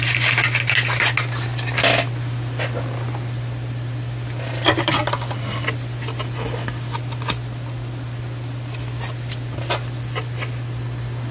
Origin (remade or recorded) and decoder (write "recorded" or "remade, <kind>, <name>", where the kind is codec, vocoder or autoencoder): recorded